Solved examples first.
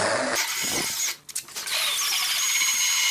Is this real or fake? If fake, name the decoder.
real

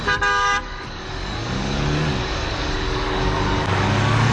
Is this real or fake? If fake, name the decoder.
fake, codec, DAC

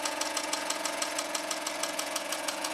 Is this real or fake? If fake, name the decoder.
fake, vocoder, Vocos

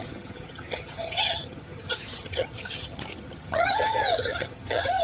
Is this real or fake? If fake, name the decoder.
fake, vocoder, HiFi-GAN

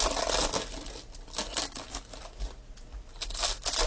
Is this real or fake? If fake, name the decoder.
real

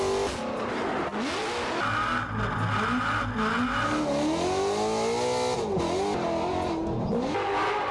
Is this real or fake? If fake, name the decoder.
real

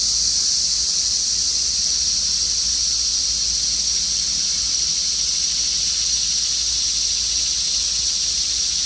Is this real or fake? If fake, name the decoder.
real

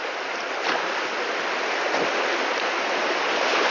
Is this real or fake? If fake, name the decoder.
real